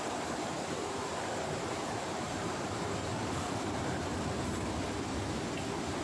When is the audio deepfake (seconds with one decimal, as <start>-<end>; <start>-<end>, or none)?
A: 0.0-4.6